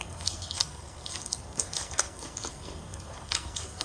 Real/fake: fake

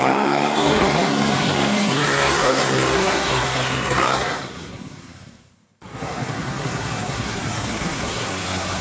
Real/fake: fake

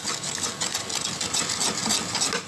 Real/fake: real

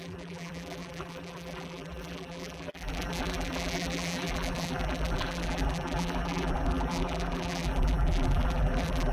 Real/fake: fake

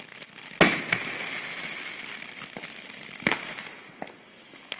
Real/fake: real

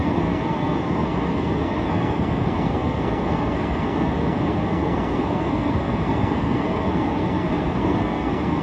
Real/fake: fake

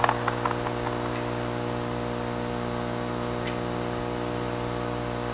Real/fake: real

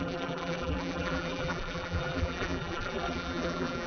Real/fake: fake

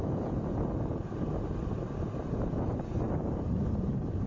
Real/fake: real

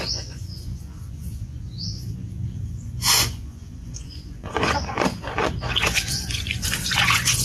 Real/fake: fake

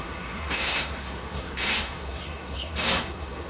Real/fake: fake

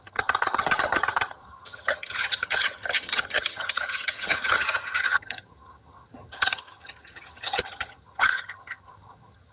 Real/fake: fake